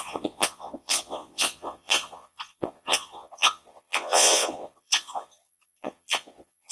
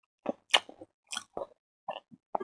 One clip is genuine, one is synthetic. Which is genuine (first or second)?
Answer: second